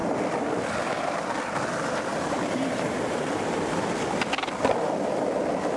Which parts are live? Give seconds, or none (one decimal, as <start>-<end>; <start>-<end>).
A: 0.0-2.1; 3.8-5.8